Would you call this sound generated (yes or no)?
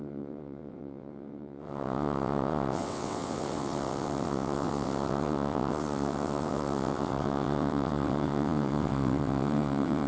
yes